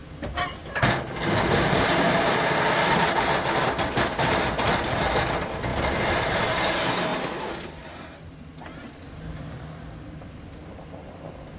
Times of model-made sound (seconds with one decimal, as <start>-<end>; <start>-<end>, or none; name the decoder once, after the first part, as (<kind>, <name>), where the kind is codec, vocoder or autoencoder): none